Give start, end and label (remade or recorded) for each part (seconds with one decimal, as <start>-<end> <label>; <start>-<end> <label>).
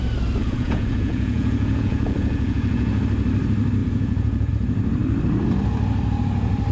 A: 0.0-0.4 recorded; 0.4-3.0 remade; 3.0-3.8 recorded; 3.8-4.5 remade; 4.5-6.7 recorded